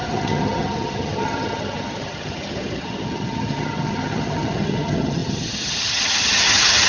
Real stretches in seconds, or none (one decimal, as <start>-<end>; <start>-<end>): none